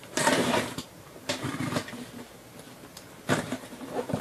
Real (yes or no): no